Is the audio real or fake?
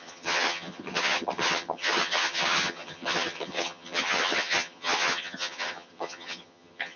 fake